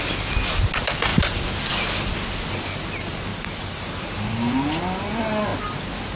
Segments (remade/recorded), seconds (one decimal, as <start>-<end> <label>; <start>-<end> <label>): 0.0-3.3 recorded; 3.3-4.1 remade; 4.1-6.2 recorded